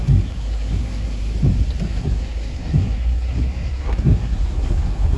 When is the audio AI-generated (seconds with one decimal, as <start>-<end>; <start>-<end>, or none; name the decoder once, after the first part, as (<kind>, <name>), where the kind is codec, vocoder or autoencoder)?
0.0-1.2 (codec, SNAC); 1.9-5.2